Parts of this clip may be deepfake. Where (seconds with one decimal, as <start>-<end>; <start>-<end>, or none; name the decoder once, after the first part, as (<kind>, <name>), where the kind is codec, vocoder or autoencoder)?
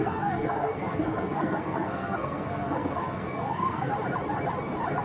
0.0-3.9 (codec, SNAC)